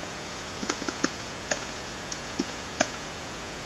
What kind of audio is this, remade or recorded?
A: remade